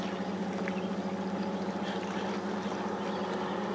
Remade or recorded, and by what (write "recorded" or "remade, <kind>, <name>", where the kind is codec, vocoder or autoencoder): recorded